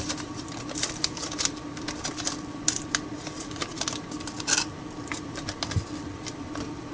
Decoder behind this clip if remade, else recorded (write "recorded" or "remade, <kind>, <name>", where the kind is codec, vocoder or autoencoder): remade, vocoder, BigVGAN v2